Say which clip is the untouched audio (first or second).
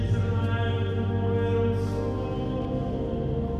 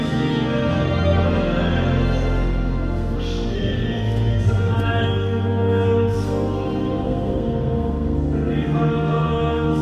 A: first